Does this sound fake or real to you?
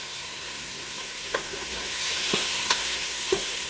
fake